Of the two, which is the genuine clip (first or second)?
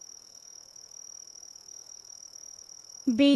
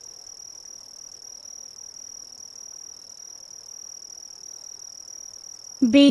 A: second